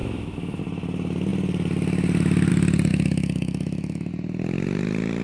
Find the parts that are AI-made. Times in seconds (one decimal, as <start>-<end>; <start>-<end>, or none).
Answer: 0.0-0.6; 2.9-4.1